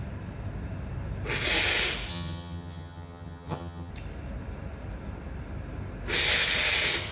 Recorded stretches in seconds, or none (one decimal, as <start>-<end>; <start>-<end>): 0.0-2.1; 3.9-7.1